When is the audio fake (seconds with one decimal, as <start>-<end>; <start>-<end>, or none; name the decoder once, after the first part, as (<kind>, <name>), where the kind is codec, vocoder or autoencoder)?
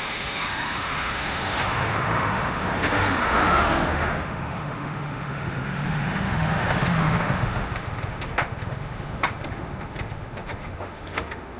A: 0.0-11.6 (autoencoder, DAC-VAE)